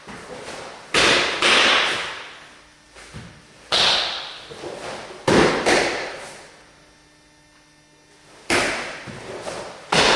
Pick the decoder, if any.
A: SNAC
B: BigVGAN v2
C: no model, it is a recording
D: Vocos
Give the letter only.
C